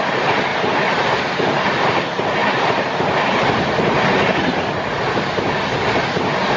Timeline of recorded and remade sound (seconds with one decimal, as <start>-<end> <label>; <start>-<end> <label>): 0.0-6.6 recorded